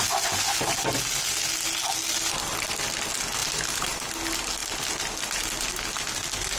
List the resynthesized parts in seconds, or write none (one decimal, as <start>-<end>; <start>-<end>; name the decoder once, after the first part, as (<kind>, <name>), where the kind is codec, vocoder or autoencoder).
3.4-4.0 (vocoder, BigVGAN v2)